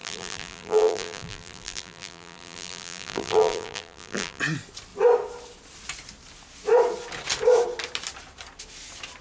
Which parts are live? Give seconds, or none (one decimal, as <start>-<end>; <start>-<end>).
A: 4.4-9.2